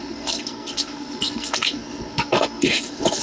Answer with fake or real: fake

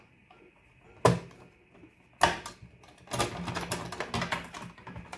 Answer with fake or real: real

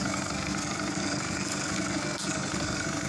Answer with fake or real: fake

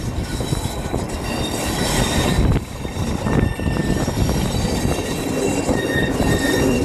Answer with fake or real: real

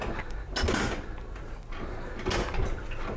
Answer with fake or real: real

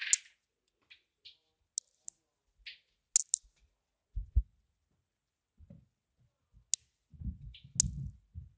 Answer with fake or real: real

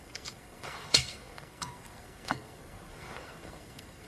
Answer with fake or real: fake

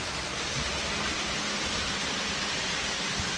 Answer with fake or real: real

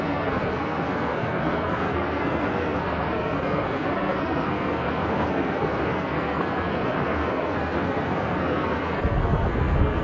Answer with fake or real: fake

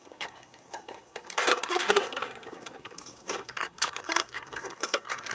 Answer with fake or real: fake